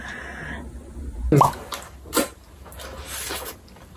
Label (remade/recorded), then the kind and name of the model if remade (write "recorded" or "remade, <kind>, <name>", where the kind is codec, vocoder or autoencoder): recorded